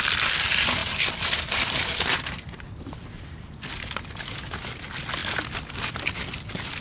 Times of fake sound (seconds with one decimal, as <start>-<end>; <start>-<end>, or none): none